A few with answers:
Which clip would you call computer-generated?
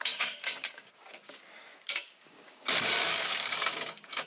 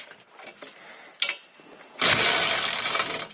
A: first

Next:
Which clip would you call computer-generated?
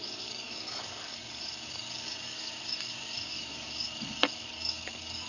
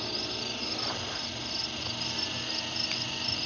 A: first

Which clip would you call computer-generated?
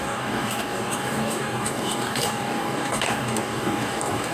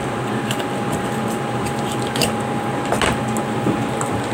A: first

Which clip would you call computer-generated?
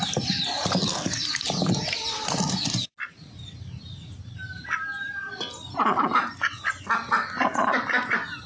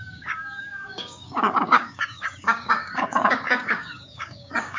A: second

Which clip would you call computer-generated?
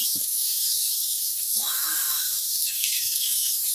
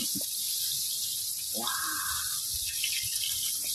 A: first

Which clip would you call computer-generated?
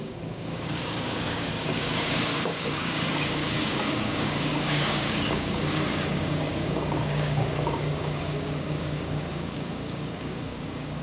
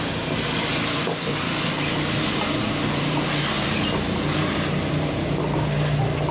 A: first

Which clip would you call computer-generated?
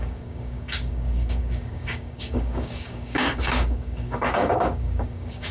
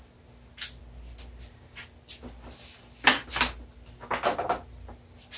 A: first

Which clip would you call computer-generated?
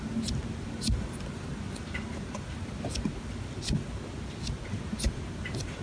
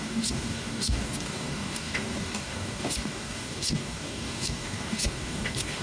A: second